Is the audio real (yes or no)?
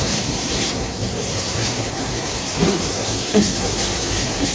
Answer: no